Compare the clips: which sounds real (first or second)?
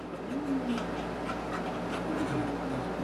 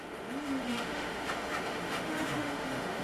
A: first